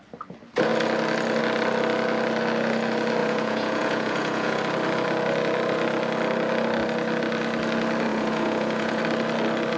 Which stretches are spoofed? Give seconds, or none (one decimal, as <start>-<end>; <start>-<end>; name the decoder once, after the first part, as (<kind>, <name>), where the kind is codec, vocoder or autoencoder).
3.2-4.6 (vocoder, Vocos); 8.1-9.0